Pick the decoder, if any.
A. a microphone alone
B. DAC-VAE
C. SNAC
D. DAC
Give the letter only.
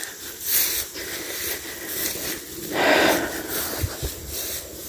A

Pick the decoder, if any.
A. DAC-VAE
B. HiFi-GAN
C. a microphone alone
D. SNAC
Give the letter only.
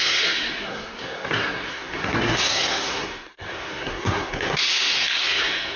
D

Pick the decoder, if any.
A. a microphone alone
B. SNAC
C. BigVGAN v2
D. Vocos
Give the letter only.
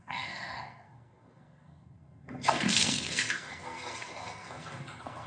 B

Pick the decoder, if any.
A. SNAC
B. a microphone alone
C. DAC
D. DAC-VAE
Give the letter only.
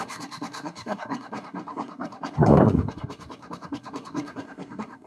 A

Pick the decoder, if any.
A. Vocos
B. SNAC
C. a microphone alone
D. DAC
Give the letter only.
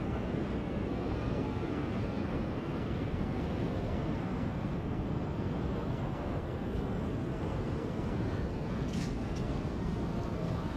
B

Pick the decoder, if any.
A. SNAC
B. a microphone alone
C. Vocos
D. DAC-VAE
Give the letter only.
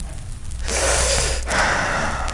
B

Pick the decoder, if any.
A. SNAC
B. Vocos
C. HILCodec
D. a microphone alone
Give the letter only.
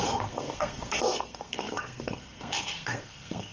A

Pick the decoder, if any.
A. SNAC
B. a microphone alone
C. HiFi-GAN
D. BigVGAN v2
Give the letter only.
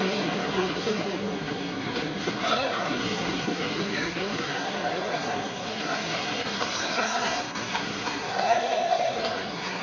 A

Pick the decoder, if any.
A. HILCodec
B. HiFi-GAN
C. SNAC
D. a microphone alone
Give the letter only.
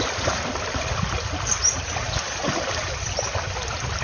D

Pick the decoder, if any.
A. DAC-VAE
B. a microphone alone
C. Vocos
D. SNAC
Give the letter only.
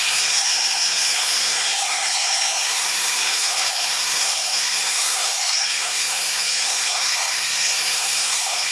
D